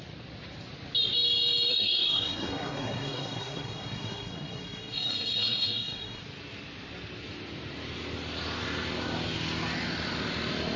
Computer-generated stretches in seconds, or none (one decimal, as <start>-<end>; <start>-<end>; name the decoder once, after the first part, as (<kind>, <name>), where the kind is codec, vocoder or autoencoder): 1.7-6.2 (codec, SNAC)